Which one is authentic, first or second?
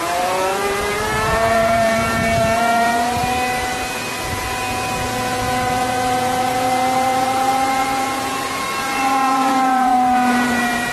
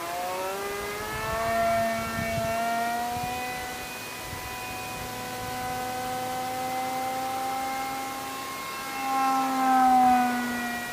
second